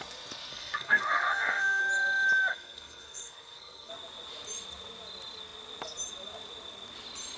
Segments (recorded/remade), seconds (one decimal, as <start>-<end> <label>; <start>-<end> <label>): 0.0-0.5 recorded; 0.5-1.8 remade; 1.8-2.5 recorded; 2.5-3.9 remade; 3.9-7.4 recorded